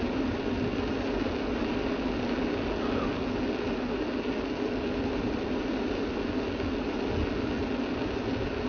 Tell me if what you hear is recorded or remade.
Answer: recorded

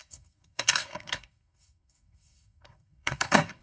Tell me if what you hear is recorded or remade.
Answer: remade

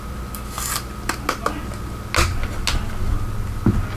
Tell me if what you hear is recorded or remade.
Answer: recorded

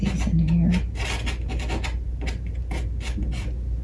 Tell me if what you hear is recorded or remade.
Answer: recorded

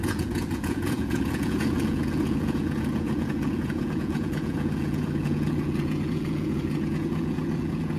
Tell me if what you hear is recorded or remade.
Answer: remade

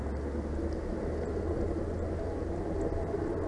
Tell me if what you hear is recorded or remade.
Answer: recorded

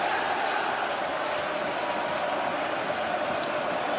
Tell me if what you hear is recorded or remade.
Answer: recorded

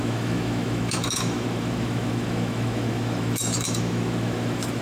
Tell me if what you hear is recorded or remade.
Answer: remade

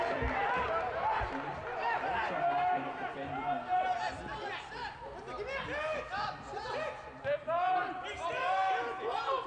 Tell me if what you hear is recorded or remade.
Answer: recorded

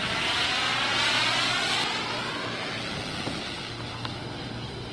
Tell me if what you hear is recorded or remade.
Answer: recorded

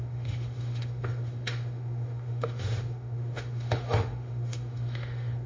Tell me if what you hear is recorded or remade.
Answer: remade